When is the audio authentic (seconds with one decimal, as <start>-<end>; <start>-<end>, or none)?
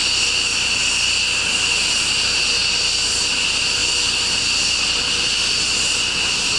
0.0-6.6